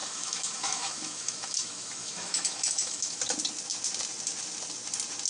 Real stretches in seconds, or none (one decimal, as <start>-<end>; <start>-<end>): 3.2-5.3